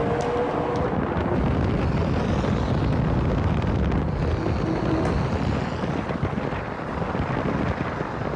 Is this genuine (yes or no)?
yes